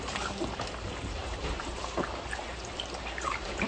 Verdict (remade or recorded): remade